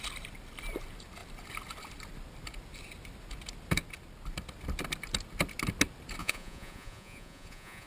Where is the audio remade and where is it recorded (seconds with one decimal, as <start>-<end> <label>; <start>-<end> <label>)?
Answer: 0.0-6.2 recorded; 6.2-7.9 remade